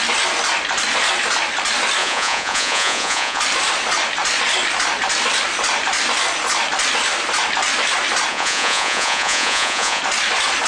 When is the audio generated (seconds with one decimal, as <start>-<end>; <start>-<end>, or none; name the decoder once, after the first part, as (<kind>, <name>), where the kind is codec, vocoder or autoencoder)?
2.0-3.4 (vocoder, Vocos); 8.3-10.0

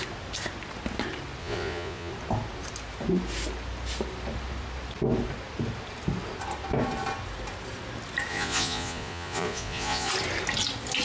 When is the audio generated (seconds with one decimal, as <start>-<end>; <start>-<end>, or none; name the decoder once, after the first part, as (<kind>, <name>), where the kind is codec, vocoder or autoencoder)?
1.4-2.1 (vocoder, Vocos); 8.3-10.1